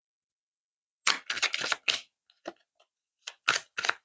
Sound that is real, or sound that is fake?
real